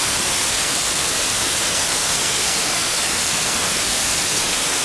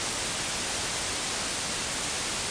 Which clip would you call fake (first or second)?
first